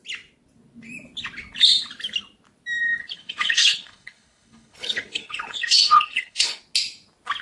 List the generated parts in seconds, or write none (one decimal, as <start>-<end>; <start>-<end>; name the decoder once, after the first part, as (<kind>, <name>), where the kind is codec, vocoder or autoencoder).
3.0-6.6 (codec, HILCodec)